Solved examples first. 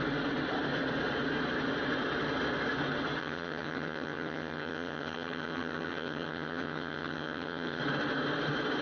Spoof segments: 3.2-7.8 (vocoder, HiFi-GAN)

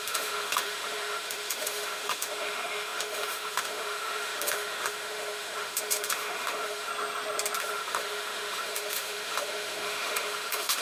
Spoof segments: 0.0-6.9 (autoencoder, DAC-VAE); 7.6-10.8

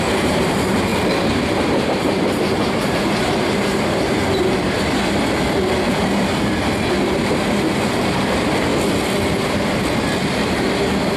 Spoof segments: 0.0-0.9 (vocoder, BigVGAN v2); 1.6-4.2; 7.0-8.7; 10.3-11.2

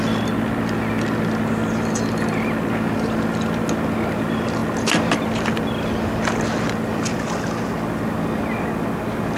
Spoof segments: none

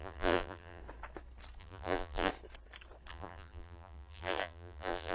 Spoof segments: 0.0-0.8 (vocoder, BigVGAN v2); 1.6-2.3; 3.1-5.1

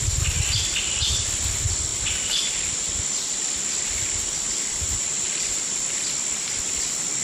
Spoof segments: 1.9-6.2 (vocoder, BigVGAN v2)

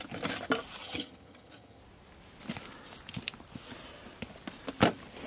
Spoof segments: 0.8-1.8 (vocoder, HiFi-GAN)